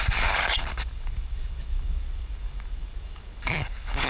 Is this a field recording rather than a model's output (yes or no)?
no